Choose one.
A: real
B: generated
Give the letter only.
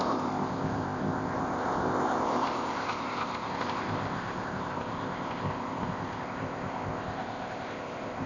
B